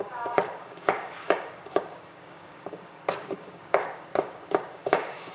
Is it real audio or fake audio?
fake